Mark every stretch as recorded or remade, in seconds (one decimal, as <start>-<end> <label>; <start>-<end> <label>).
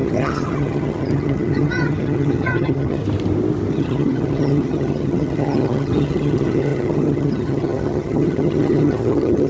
0.0-3.0 remade; 3.0-3.7 recorded; 3.7-9.5 remade